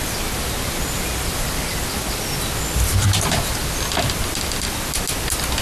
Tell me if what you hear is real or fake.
real